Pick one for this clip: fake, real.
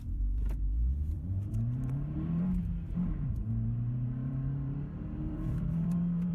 fake